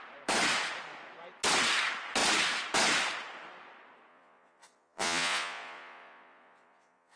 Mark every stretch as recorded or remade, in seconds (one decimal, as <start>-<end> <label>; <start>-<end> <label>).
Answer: 0.0-4.1 recorded; 4.1-7.2 remade